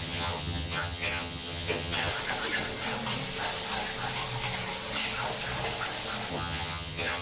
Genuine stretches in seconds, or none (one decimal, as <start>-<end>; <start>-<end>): 2.1-6.3

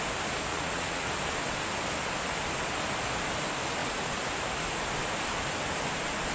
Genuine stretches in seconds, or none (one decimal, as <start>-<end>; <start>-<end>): 0.0-0.5; 1.1-6.3